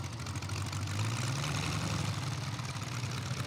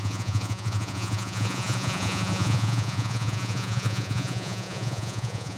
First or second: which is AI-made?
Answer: second